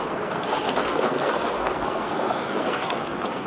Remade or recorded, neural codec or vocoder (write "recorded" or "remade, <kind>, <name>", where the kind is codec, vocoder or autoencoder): remade, codec, SNAC